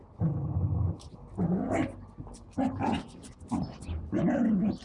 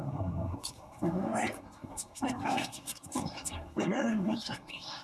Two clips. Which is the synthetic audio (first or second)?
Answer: second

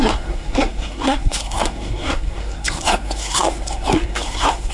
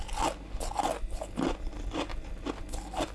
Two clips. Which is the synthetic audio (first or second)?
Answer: first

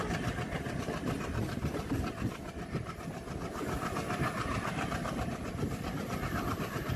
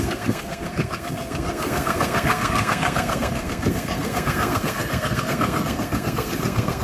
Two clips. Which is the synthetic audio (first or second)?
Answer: second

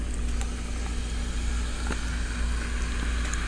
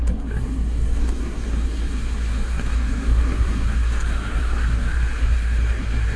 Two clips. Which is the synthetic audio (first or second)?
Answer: second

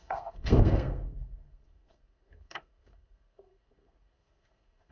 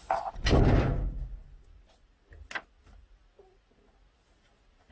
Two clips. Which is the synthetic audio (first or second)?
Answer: first